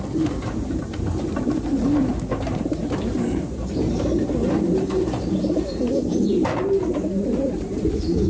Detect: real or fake fake